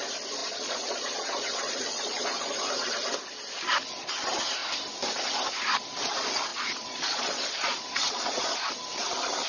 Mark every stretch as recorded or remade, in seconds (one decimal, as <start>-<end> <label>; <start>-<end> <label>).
0.0-0.4 recorded; 0.4-2.7 remade; 2.7-6.5 recorded; 6.5-8.7 remade; 8.7-9.5 recorded